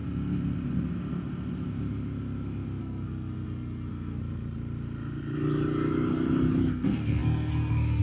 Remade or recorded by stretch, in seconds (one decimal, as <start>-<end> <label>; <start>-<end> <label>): 0.0-2.8 recorded; 2.8-4.2 remade; 4.2-6.7 recorded; 6.7-8.0 remade